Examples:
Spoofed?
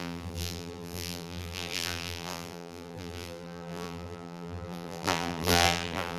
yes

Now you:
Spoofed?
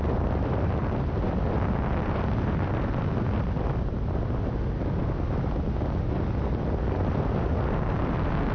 no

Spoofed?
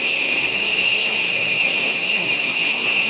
yes